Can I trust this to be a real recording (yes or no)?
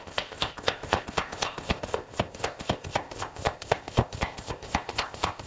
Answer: no